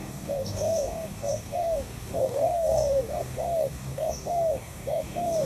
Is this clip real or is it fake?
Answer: fake